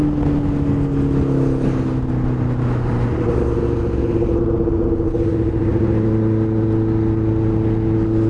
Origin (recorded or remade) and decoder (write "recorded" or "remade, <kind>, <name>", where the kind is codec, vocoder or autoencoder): recorded